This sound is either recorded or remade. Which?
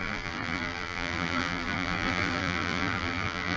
remade